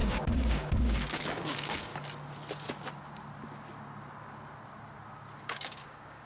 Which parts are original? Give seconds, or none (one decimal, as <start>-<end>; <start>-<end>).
1.9-5.4